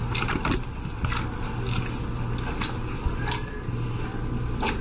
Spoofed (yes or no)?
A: no